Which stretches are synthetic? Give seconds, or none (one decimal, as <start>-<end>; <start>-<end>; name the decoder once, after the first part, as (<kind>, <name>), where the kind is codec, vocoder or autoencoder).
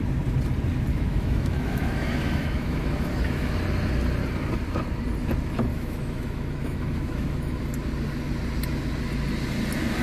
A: 0.9-3.5 (autoencoder, DAC-VAE); 5.7-7.6